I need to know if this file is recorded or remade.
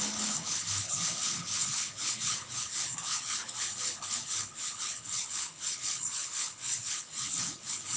remade